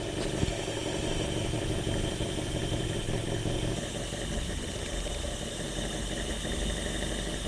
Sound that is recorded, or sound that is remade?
recorded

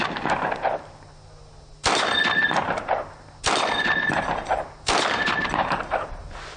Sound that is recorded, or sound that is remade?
recorded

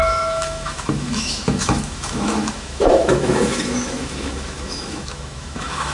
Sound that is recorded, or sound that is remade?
remade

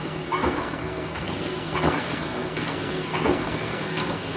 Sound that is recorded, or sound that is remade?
remade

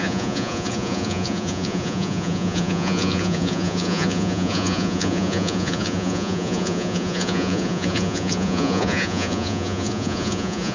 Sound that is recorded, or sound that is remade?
remade